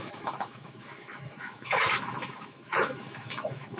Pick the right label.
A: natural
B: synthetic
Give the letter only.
B